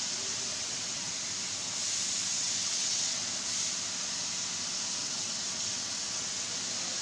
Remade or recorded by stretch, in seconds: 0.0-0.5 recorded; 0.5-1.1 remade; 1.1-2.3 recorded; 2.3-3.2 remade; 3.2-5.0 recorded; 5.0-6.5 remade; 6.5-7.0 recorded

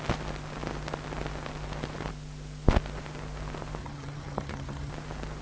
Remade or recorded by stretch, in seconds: 0.0-3.8 recorded; 3.8-4.9 remade; 4.9-5.4 recorded

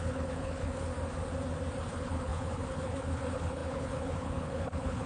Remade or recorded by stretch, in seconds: 0.0-0.9 remade; 0.9-1.8 recorded; 1.8-5.1 remade